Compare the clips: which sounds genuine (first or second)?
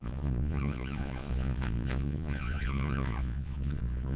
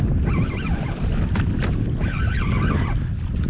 second